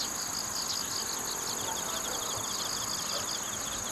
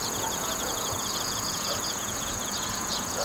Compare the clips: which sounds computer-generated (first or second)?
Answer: second